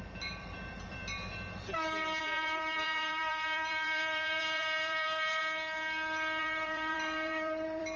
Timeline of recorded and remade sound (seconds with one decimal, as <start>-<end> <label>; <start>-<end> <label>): 0.0-1.1 remade; 1.1-2.2 recorded; 2.2-5.4 remade; 5.4-6.4 recorded; 6.4-8.0 remade